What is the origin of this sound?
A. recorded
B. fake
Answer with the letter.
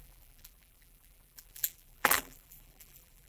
B